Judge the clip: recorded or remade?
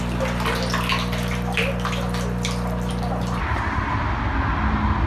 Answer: recorded